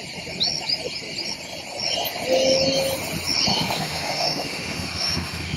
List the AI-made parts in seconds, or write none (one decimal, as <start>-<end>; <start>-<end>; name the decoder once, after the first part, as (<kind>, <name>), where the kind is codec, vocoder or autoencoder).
3.5-5.6 (autoencoder, DAC-VAE)